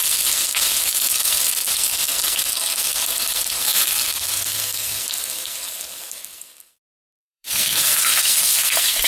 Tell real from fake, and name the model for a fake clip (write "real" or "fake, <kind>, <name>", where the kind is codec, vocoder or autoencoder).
fake, codec, SNAC